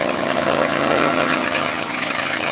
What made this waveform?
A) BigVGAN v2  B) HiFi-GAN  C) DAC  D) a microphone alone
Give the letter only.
B